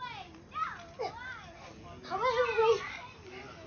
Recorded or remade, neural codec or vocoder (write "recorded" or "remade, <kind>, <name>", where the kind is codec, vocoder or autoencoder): recorded